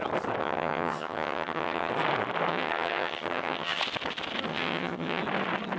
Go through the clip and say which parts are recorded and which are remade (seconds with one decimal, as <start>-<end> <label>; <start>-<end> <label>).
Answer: 0.0-0.4 recorded; 0.4-1.9 remade; 1.9-2.5 recorded; 2.5-3.8 remade; 3.8-4.5 recorded; 4.5-5.2 remade; 5.2-5.8 recorded